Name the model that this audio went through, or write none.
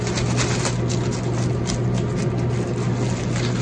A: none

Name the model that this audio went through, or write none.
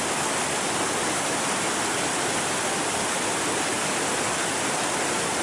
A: none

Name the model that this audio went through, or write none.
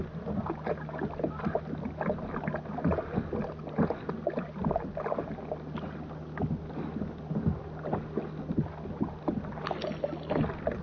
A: none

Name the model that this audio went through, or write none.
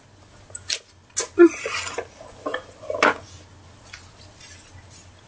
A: none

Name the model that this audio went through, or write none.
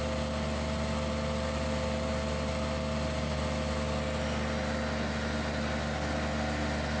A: none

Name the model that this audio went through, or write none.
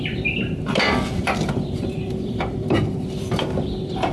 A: vocoder, BigVGAN v2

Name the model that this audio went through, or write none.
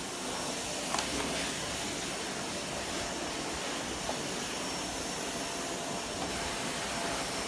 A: none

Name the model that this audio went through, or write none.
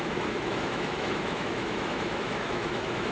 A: autoencoder, DAC-VAE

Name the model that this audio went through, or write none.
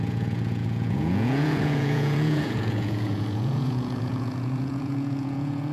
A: vocoder, Vocos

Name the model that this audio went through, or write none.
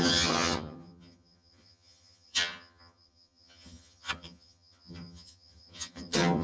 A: vocoder, HiFi-GAN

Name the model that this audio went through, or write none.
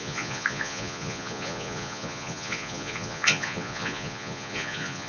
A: vocoder, Vocos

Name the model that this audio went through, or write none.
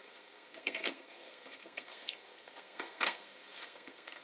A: codec, SNAC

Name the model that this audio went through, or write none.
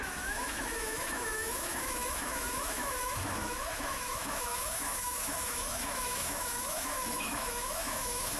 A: autoencoder, DAC-VAE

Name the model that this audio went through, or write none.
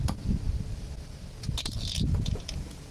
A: none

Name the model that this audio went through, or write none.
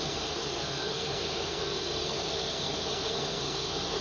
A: codec, SNAC